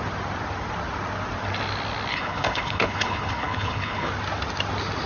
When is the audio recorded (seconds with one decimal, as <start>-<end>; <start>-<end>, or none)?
0.0-2.1; 4.1-5.1